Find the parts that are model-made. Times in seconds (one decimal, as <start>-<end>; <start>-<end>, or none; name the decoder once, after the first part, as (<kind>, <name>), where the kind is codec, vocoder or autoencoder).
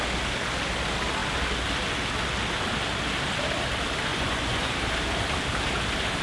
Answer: 4.1-4.7 (vocoder, Vocos)